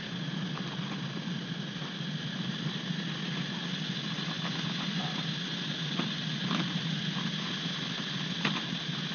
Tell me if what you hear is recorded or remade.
recorded